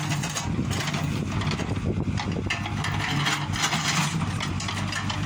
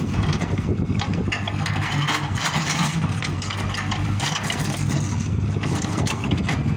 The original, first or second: first